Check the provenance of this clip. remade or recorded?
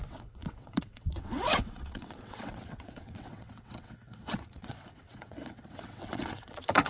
remade